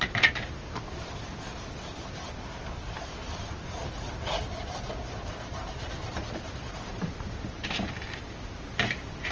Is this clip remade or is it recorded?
recorded